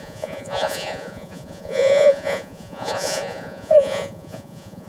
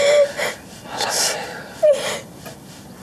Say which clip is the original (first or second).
second